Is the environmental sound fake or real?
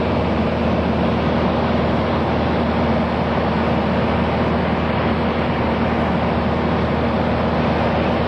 real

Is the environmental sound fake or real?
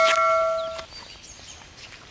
real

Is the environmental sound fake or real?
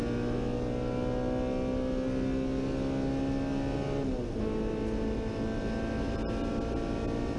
real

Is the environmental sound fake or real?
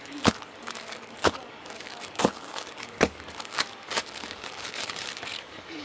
fake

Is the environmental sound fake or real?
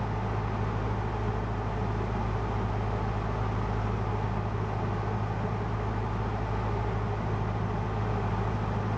real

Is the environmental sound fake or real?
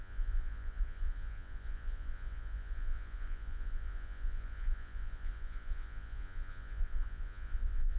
fake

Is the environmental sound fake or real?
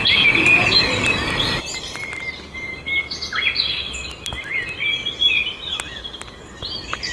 real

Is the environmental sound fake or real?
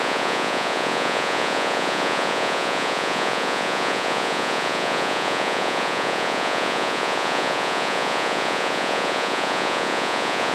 fake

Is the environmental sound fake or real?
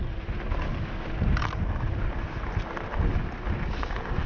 real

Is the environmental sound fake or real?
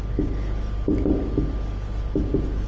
real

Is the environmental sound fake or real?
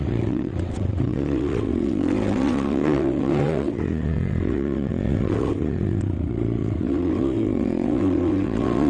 fake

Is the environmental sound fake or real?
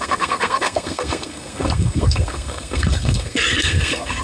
fake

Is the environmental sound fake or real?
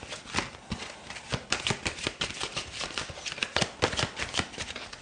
real